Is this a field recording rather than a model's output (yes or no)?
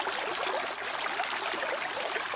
yes